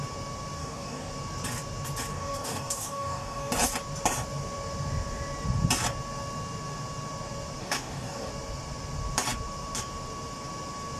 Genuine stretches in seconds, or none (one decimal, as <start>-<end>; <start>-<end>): 0.0-0.6; 1.1-2.1; 3.5-7.6; 8.3-11.0